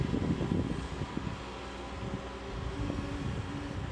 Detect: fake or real real